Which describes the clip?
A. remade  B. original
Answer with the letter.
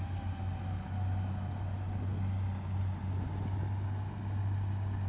B